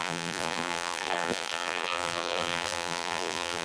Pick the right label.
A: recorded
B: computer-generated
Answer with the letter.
B